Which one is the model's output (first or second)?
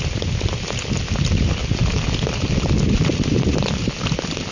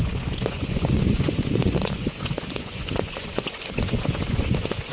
second